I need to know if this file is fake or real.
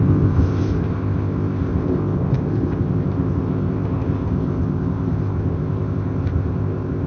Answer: fake